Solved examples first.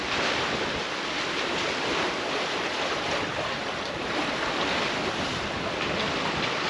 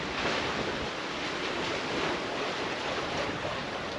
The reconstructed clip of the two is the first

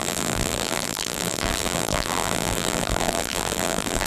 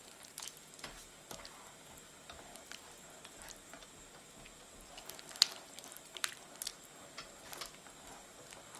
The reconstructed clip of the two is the first